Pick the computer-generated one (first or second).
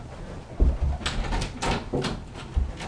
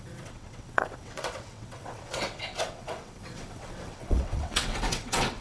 second